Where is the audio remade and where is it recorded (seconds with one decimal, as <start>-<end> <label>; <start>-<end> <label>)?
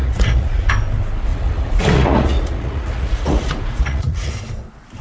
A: 0.0-0.7 remade; 0.7-1.3 recorded; 1.3-4.3 remade; 4.3-5.0 recorded